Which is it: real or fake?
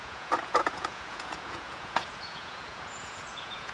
fake